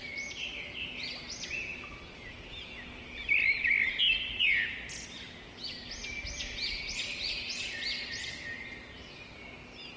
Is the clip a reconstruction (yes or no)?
no